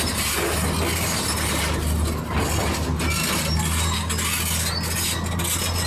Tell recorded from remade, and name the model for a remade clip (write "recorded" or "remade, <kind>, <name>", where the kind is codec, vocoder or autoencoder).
recorded